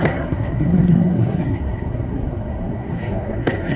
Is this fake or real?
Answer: fake